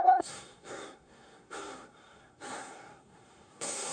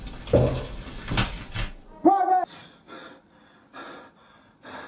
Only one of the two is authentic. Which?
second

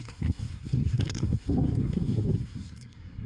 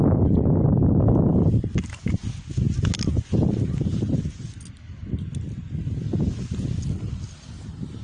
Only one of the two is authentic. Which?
second